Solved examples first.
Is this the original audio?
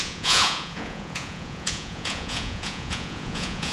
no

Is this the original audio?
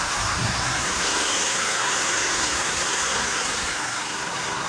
no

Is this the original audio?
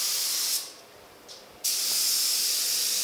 yes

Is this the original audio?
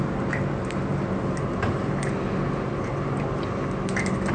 yes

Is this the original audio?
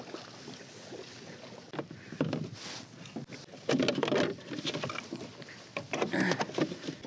yes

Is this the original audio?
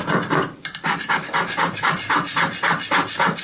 yes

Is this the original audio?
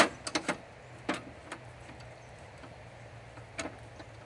yes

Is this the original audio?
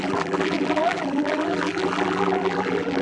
no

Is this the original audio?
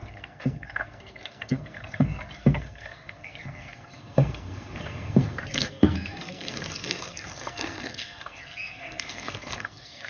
no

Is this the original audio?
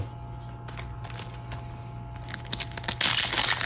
yes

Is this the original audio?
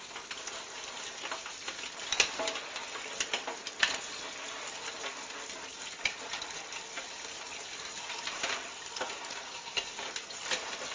yes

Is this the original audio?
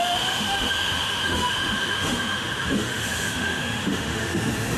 no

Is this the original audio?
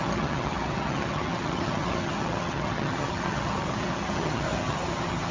no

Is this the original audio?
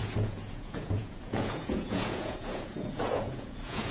no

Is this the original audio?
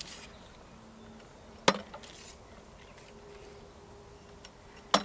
yes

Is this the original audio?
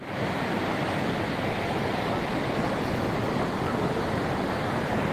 yes